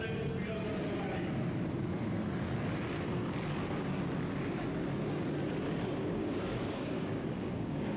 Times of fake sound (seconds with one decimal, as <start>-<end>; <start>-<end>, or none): 6.2-8.0